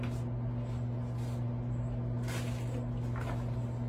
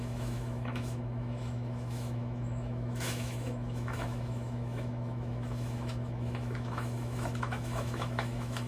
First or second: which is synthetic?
second